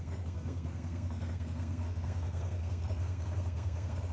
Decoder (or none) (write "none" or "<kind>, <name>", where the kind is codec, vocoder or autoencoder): codec, SNAC